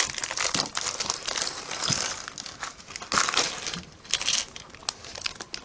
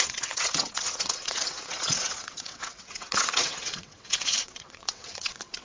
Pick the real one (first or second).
first